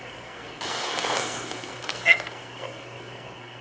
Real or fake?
fake